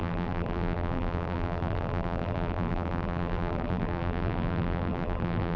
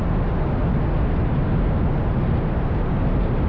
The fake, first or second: first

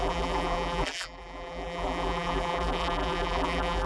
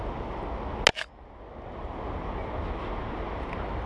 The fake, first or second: first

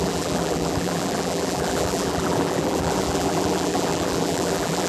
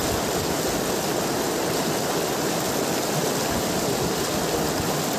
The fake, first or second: first